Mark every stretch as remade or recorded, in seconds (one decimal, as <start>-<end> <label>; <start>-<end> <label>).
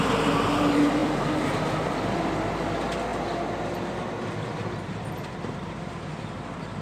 0.0-3.1 remade; 3.1-4.4 recorded; 4.4-6.8 remade